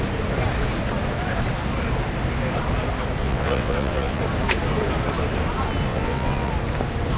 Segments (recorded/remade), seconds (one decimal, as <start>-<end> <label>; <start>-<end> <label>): 0.0-3.2 recorded; 3.2-4.2 remade; 4.2-5.9 recorded; 5.9-6.5 remade; 6.5-7.2 recorded